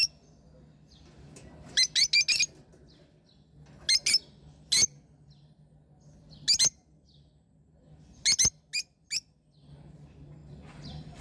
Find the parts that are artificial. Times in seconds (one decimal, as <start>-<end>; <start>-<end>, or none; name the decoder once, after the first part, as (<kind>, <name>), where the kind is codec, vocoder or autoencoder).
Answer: none